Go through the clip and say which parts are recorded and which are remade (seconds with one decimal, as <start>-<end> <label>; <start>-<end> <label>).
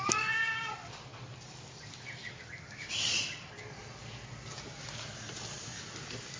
0.0-6.4 recorded